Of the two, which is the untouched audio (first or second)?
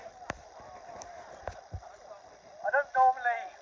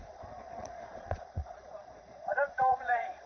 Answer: first